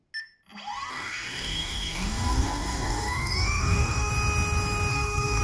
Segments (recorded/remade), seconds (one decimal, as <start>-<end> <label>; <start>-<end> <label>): 0.0-0.9 recorded; 0.9-4.1 remade; 4.1-4.9 recorded; 4.9-5.4 remade